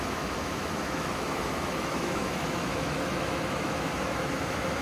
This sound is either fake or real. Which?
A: fake